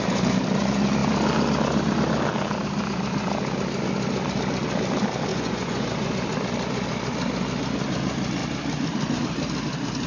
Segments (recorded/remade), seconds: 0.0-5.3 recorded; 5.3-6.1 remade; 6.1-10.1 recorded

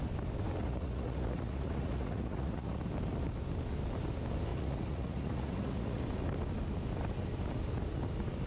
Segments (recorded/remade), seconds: 0.0-0.6 recorded; 0.6-2.8 remade; 2.8-4.5 recorded; 4.5-6.0 remade; 6.0-8.5 recorded

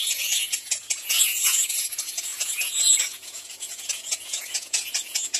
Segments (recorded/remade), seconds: 0.0-5.4 remade

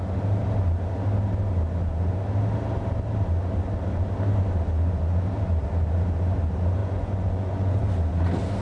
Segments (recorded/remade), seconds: 0.0-6.8 recorded; 6.8-7.8 remade; 7.8-8.6 recorded

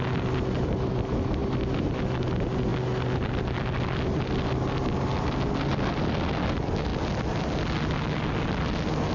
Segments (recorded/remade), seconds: 0.0-9.1 recorded